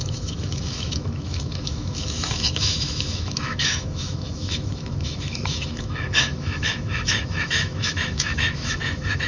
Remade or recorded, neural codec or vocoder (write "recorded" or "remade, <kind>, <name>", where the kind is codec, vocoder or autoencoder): remade, autoencoder, DAC-VAE